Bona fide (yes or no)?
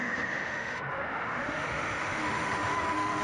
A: no